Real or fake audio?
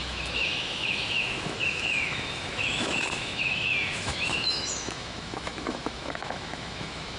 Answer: fake